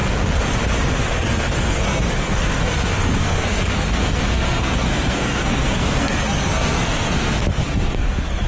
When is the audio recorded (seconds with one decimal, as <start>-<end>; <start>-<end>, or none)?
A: 0.0-0.9

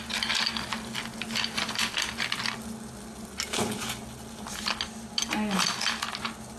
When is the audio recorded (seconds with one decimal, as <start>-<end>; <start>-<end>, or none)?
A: 0.0-6.6

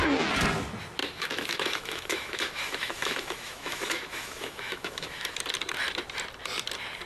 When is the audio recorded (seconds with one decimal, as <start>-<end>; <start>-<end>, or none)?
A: 0.0-1.0; 5.3-7.1

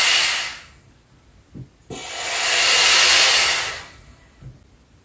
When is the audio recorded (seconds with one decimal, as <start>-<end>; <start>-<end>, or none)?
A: 0.0-5.0

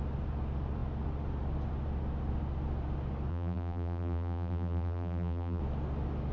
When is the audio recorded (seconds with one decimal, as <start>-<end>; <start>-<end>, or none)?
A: 0.0-3.3; 5.6-6.3

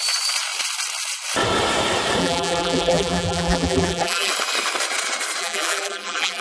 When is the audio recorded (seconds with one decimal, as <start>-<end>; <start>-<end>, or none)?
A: 0.0-2.2; 4.3-5.4

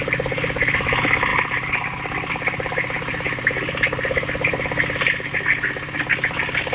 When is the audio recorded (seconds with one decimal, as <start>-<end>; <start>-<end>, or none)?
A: none